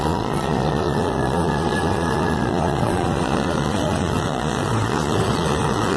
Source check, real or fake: fake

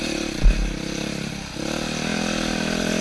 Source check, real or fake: real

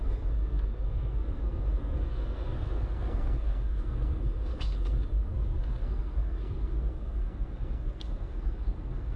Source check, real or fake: fake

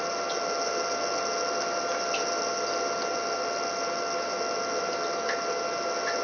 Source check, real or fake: real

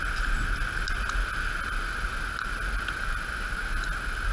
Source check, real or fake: real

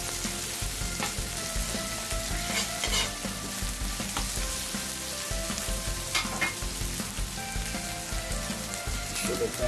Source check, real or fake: real